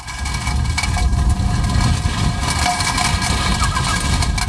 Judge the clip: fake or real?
real